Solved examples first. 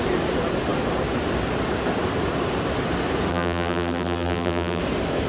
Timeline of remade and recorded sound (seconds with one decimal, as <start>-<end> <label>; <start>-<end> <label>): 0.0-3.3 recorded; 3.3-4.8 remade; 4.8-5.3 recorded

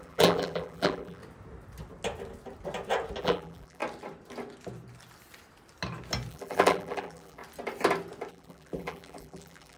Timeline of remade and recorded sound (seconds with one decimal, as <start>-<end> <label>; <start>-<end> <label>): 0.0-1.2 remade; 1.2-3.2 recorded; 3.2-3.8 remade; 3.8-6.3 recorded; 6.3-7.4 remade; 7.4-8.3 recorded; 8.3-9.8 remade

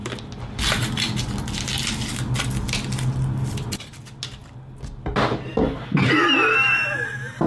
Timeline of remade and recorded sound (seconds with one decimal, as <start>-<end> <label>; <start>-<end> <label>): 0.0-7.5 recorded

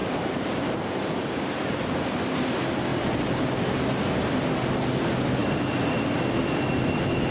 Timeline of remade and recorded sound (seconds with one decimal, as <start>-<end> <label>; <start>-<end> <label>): 0.0-2.9 recorded; 2.9-3.5 remade; 3.5-5.4 recorded; 5.4-6.4 remade; 6.4-7.3 recorded

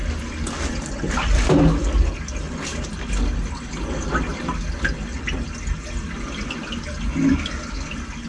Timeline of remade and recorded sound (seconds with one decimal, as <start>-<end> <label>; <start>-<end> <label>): 0.0-0.9 recorded; 0.9-2.1 remade; 2.1-8.3 recorded

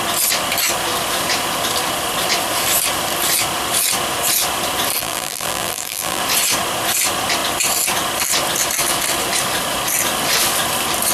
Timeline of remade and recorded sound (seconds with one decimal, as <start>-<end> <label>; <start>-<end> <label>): 0.0-5.0 recorded; 5.0-6.2 remade; 6.2-11.1 recorded

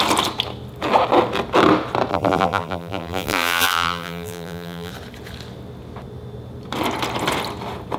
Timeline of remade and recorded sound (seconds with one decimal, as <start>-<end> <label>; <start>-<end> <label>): 0.0-2.1 recorded; 2.1-4.9 remade; 4.9-8.0 recorded